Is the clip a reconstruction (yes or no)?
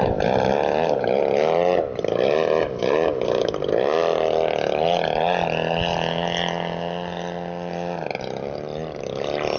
no